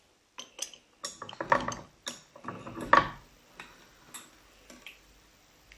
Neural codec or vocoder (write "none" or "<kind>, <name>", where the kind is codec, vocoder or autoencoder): none